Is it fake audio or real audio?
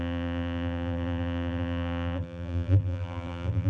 fake